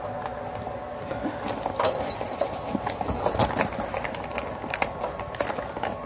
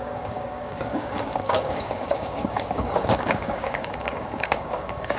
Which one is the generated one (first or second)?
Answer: second